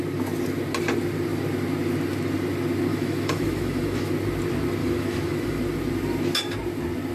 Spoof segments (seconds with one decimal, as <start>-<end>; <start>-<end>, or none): 2.9-4.1; 4.8-5.6